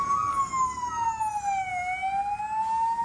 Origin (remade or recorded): recorded